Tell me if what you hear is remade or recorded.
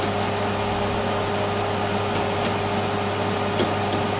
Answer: recorded